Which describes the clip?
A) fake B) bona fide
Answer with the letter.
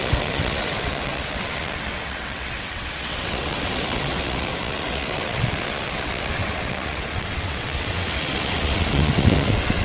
A